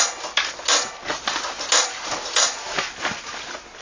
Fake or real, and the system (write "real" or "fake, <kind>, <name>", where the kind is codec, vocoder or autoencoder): real